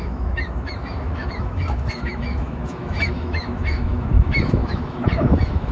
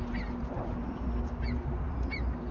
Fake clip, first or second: first